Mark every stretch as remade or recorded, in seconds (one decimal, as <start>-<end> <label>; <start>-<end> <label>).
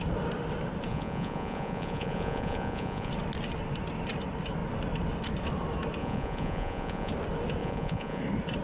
0.0-0.9 recorded; 0.9-3.1 remade; 3.1-6.0 recorded; 6.0-7.1 remade; 7.1-7.6 recorded; 7.6-8.2 remade; 8.2-8.6 recorded